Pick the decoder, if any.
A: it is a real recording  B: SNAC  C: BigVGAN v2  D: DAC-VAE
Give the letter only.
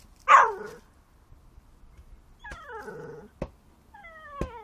A